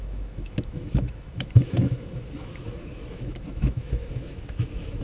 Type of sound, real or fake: fake